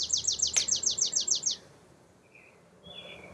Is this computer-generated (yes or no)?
yes